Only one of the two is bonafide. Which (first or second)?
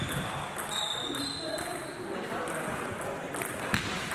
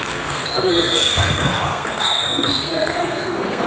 first